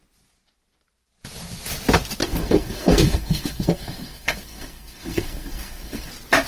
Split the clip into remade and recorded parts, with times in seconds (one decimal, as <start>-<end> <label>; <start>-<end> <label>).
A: 0.0-2.2 recorded; 2.2-6.1 remade; 6.1-6.5 recorded